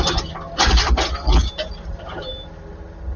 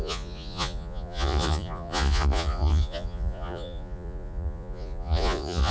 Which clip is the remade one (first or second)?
second